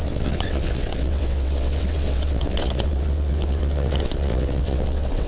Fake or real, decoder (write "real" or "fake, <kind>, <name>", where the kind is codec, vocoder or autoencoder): fake, vocoder, WaveNeXt